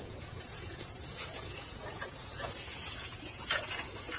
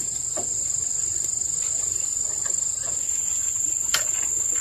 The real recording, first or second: second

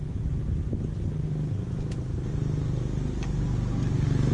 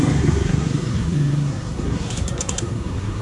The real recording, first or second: first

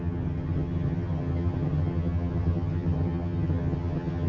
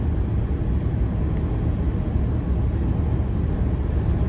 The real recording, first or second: second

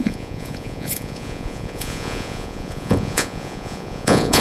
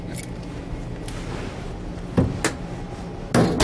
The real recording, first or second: second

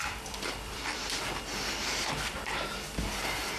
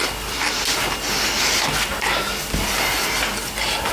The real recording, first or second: second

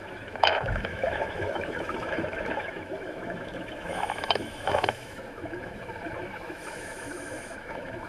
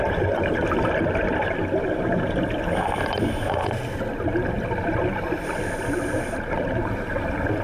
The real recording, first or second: second